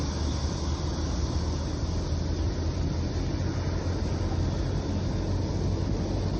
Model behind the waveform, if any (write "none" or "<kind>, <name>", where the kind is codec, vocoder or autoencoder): none